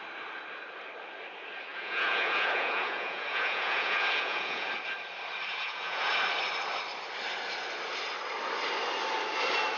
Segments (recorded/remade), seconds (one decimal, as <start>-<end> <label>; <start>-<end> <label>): 0.0-1.7 recorded; 1.7-4.7 remade; 4.7-5.5 recorded; 5.5-6.1 remade; 6.1-9.8 recorded